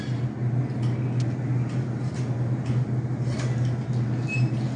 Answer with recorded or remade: recorded